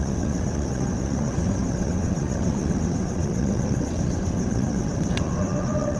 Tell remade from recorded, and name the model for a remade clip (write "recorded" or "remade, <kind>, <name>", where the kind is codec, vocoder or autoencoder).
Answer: remade, vocoder, WaveNeXt